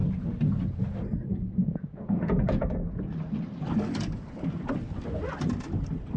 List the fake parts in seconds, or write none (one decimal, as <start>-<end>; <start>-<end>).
1.3-3.0